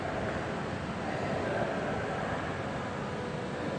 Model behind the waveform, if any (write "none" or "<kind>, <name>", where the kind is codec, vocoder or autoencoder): none